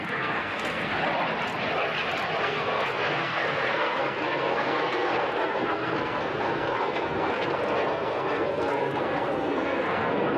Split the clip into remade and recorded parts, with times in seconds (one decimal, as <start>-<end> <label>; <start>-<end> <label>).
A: 0.0-1.0 remade; 1.0-2.4 recorded; 2.4-10.4 remade